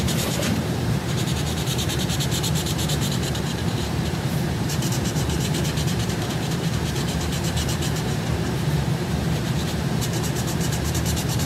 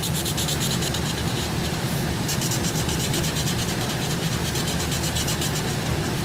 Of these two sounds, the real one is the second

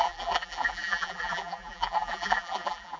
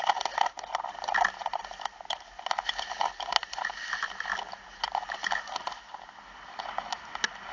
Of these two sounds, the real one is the second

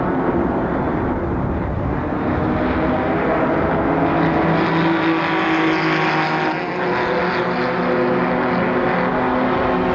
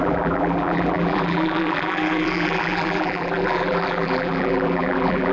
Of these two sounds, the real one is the first